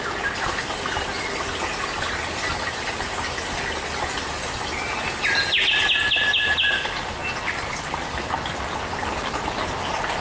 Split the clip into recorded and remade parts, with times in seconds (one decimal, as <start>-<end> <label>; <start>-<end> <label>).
0.0-10.2 recorded